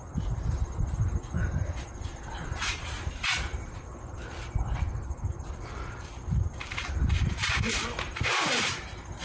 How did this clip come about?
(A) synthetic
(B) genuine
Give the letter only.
A